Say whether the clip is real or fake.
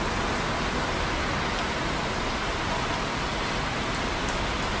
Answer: real